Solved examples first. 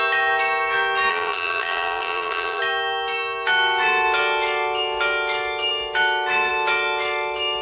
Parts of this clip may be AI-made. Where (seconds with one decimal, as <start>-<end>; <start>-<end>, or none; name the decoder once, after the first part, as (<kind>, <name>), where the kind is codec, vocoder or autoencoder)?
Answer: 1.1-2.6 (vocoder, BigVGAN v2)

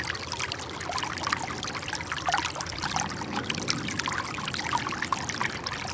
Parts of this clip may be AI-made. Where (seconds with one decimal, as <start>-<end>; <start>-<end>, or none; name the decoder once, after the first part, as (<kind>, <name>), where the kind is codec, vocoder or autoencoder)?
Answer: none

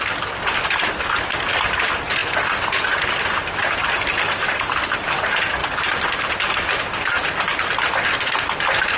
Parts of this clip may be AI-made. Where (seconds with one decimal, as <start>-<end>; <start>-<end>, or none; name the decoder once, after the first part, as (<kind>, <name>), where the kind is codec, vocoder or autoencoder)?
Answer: none

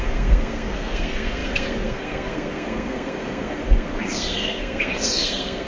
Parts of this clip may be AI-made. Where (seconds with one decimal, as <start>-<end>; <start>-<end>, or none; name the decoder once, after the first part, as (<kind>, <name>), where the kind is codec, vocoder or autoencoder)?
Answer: 0.0-5.7 (codec, SNAC)

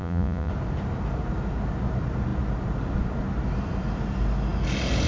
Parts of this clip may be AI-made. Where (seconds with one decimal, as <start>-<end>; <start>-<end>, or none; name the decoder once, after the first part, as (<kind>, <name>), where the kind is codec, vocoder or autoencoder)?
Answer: 0.0-0.5 (vocoder, Vocos)

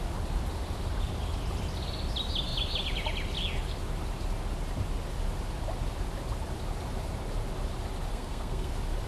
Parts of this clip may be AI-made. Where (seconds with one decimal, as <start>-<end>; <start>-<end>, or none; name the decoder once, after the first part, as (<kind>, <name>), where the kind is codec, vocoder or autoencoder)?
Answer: 8.1-8.7 (codec, SNAC)

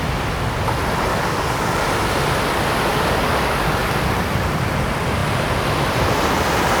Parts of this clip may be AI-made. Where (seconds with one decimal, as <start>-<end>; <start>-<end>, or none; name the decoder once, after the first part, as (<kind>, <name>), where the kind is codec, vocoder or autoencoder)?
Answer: 1.1-1.9 (codec, DAC); 2.9-3.9